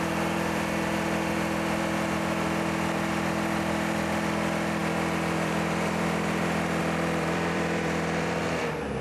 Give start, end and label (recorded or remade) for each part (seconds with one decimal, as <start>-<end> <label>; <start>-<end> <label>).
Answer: 0.0-9.0 remade

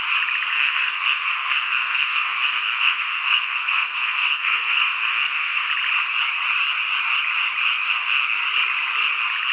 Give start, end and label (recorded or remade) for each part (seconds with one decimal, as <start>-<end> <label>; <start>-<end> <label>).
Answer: 0.0-0.5 recorded; 0.5-5.7 remade; 5.7-7.9 recorded; 7.9-8.4 remade; 8.4-9.5 recorded

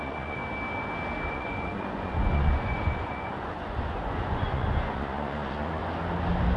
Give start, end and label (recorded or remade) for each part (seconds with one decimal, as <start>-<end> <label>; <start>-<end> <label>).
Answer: 0.0-0.4 remade; 0.4-1.3 recorded; 1.3-5.8 remade; 5.8-6.6 recorded